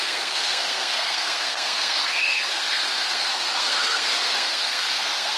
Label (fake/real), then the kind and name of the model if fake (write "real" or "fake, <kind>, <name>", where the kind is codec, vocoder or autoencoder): fake, codec, SNAC